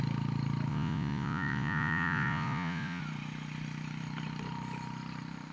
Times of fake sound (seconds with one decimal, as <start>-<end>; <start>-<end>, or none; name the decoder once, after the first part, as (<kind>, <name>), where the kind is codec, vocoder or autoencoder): 0.7-3.0 (vocoder, Vocos)